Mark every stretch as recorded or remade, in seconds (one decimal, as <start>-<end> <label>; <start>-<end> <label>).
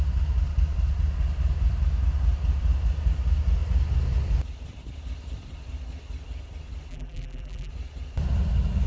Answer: 0.0-6.9 recorded; 6.9-7.7 remade; 7.7-8.9 recorded